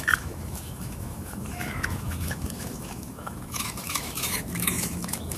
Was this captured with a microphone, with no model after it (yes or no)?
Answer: no